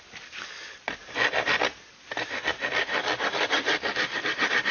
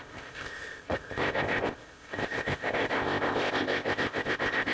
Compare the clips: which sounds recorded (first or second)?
first